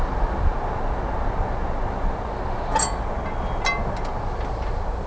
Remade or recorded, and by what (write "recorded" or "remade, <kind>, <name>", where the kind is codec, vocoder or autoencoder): recorded